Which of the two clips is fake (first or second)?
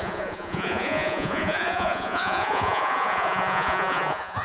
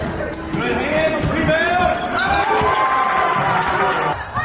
first